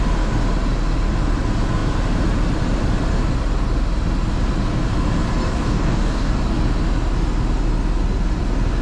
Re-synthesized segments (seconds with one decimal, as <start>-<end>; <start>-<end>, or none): 5.4-6.3